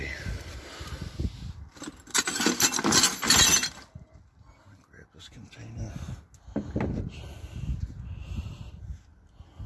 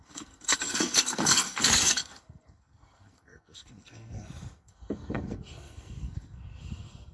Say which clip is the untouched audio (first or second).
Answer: first